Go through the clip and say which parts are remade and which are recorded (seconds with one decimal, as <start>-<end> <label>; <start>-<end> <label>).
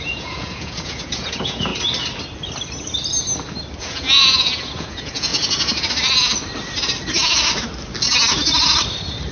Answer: 0.0-1.7 remade; 1.7-3.8 recorded; 3.8-5.3 remade; 5.3-9.3 recorded